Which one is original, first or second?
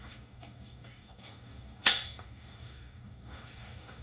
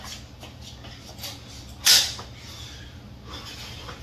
second